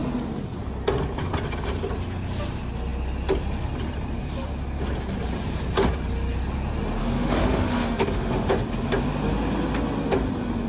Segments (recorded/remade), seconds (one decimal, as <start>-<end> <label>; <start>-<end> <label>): 0.0-7.0 recorded; 7.0-8.5 remade; 8.5-10.7 recorded

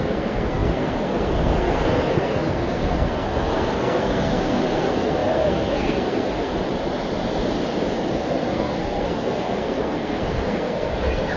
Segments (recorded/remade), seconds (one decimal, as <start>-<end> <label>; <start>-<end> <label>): 0.0-6.5 remade; 6.5-8.1 recorded; 8.1-11.4 remade

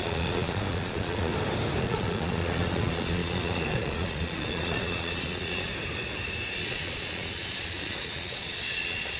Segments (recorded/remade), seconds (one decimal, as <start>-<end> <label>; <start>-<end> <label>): 0.0-1.3 remade; 1.3-1.8 recorded; 1.8-5.7 remade; 5.7-6.5 recorded; 6.5-9.2 remade